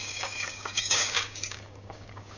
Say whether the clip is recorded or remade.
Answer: remade